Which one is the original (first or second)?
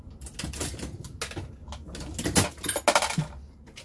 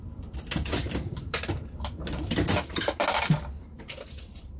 first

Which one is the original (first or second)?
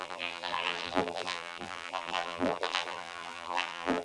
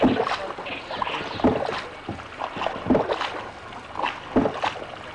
second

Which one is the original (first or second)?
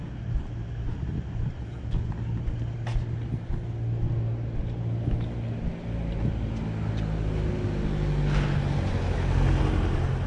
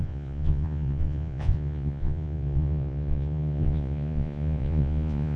first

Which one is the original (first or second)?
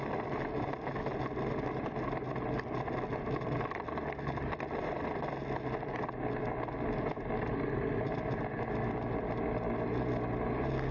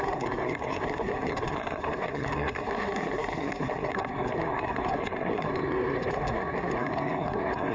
first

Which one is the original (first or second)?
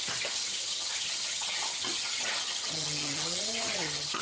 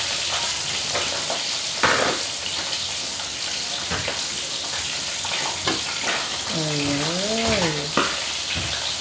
second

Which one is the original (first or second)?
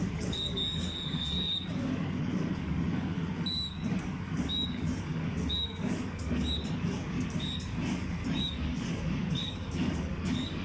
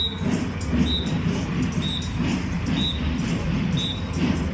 second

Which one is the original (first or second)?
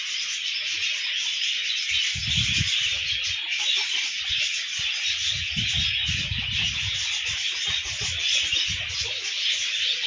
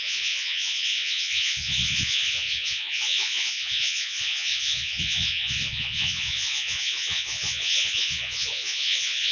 first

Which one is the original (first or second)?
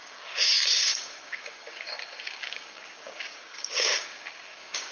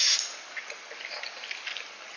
second